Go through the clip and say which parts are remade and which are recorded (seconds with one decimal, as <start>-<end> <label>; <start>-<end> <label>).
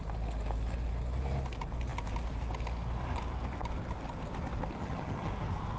0.0-4.8 recorded; 4.8-5.3 remade; 5.3-5.8 recorded